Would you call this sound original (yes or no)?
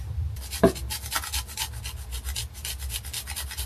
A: yes